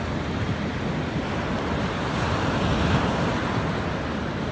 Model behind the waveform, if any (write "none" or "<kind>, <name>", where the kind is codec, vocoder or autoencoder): none